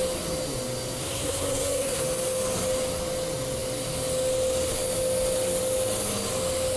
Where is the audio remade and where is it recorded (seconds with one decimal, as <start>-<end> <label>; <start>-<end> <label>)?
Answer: 0.0-1.0 recorded; 1.0-2.0 remade; 2.0-6.8 recorded